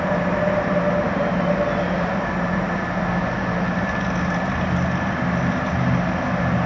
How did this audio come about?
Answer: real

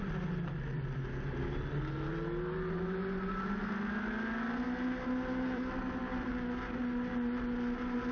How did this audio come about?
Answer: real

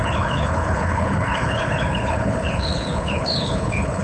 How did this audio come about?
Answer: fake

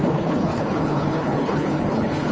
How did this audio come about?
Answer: fake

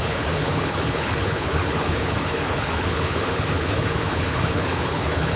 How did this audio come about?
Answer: fake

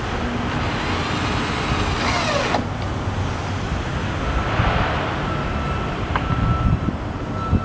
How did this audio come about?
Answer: real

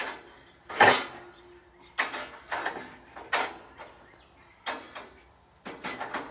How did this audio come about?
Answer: real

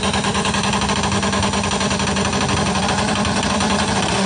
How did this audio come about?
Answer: real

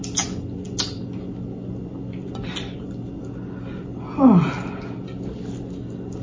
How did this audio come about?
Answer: real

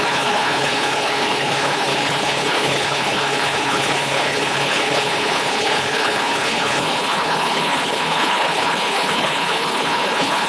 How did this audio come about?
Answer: fake